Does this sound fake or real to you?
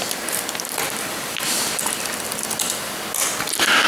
real